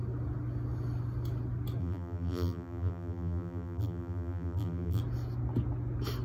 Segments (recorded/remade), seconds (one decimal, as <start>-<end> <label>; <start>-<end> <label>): 0.0-1.8 recorded; 1.8-5.0 remade; 5.0-6.2 recorded

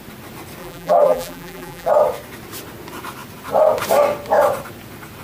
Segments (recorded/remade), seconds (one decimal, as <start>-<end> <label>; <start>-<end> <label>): 0.0-0.6 recorded; 0.6-1.9 remade; 1.9-5.2 recorded

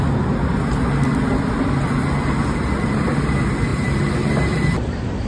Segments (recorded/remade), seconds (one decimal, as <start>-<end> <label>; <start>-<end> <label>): 0.0-3.7 recorded; 3.7-5.3 remade